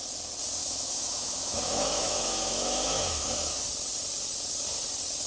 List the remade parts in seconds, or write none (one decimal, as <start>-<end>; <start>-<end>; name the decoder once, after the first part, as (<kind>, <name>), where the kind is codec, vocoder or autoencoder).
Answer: 0.6-3.7 (autoencoder, DAC-VAE)